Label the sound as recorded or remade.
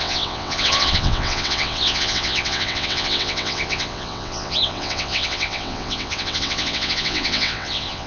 remade